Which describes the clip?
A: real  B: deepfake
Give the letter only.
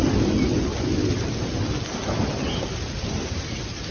A